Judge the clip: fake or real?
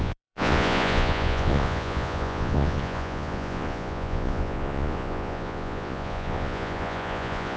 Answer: fake